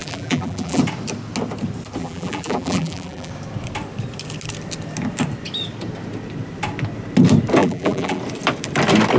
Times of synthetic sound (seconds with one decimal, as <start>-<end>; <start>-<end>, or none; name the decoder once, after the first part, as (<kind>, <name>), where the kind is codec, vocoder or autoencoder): 0.0-0.8 (vocoder, BigVGAN v2); 2.0-3.3; 7.6-8.2